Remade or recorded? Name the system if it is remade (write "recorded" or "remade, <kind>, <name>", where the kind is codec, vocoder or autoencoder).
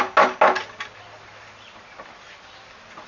recorded